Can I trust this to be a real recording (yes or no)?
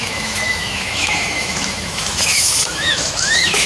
no